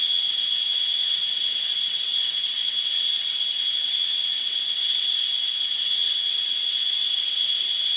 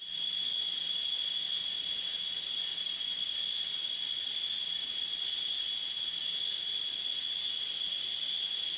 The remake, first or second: first